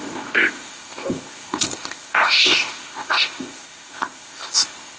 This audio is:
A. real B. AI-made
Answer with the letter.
B